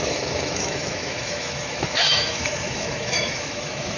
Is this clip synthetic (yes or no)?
yes